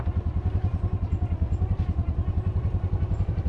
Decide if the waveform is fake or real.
real